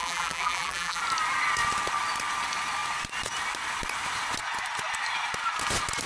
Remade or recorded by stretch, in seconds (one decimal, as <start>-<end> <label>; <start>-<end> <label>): 0.0-1.0 remade; 1.0-6.1 recorded